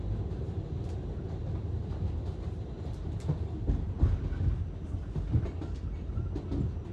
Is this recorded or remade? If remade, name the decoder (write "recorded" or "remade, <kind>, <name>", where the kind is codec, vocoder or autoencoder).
recorded